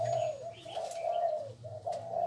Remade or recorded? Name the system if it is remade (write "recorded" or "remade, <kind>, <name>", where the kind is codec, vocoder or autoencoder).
recorded